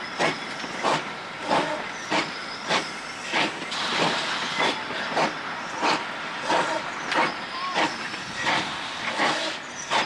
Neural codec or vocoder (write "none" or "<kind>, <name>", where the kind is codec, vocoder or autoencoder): none